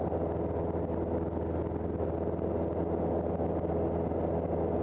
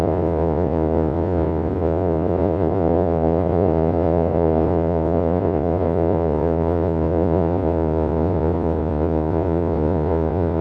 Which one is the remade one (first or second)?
second